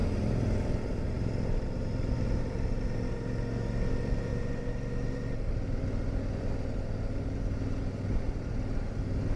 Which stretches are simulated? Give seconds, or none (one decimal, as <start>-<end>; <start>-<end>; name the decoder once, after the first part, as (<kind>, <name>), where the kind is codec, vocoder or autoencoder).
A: 0.0-2.4 (vocoder, BigVGAN v2)